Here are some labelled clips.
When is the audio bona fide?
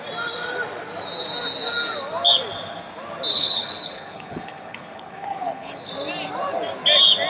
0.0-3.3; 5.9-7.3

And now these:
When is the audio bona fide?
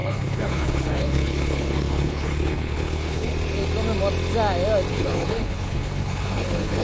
3.3-4.9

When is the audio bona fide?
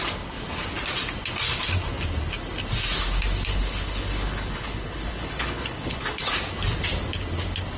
0.0-3.5; 6.3-7.8